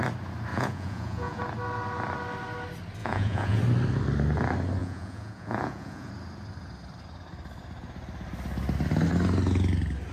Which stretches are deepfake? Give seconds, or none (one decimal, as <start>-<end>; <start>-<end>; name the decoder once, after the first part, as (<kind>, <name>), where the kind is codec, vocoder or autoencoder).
0.5-1.4 (vocoder, Vocos); 3.0-3.6; 4.8-6.1